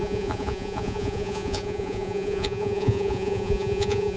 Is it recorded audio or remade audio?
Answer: remade